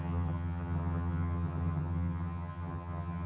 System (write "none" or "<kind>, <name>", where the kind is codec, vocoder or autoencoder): vocoder, HiFi-GAN